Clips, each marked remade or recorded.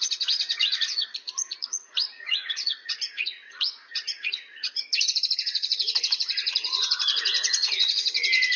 remade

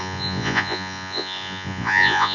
remade